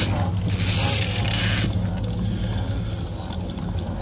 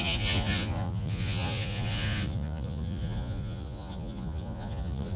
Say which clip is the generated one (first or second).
second